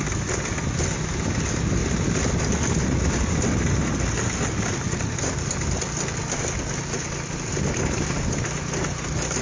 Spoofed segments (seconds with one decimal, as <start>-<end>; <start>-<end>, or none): none